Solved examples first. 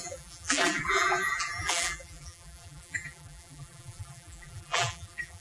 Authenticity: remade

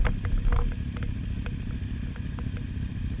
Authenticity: recorded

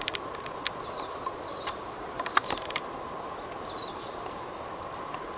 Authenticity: remade